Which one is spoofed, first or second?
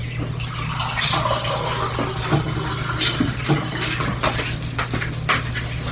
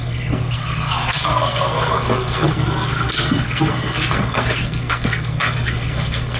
second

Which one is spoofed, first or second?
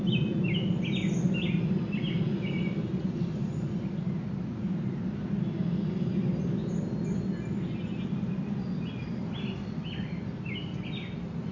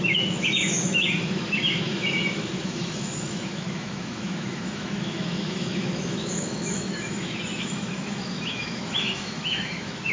second